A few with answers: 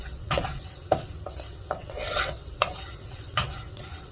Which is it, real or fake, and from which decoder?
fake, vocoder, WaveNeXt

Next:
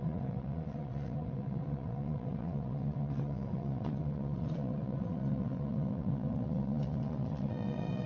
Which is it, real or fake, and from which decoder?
fake, vocoder, WaveNeXt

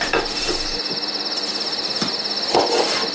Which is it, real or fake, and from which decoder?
real